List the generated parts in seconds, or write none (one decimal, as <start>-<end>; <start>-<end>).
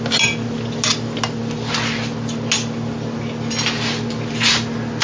none